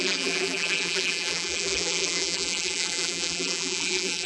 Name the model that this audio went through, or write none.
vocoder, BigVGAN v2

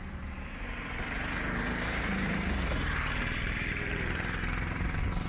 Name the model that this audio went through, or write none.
vocoder, BigVGAN v2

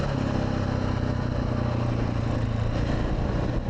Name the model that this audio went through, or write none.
none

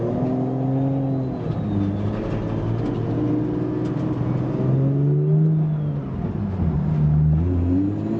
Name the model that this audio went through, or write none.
none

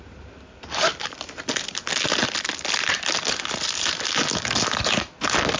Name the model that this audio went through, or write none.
none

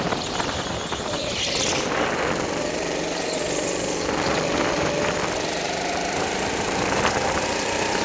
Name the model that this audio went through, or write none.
vocoder, BigVGAN v2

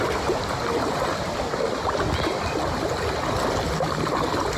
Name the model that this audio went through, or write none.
none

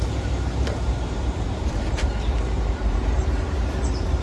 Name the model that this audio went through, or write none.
vocoder, BigVGAN v2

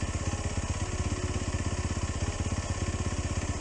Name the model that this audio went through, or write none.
none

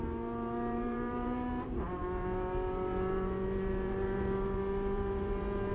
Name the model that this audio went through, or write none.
vocoder, BigVGAN v2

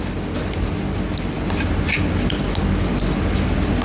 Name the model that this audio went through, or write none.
none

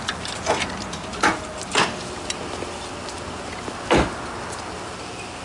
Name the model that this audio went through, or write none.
none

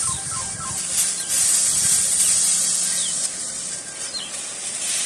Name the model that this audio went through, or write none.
none